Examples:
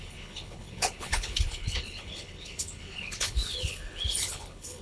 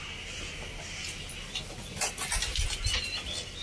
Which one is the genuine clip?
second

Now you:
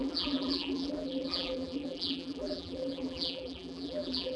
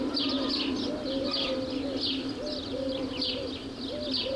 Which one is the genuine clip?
second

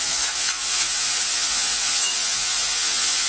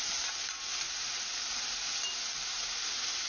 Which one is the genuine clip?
second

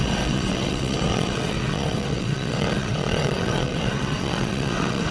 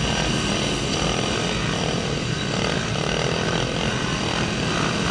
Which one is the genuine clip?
second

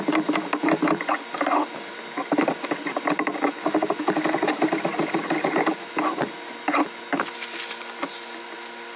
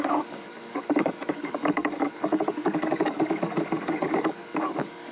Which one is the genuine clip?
first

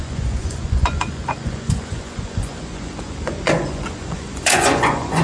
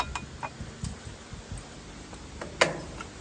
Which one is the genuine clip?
second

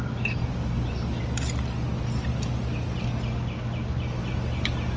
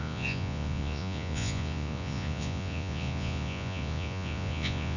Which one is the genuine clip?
first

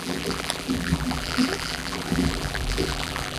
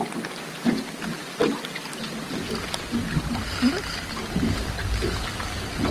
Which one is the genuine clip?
second